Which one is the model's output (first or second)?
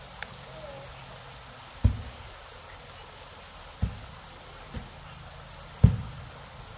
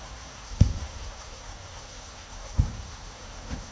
second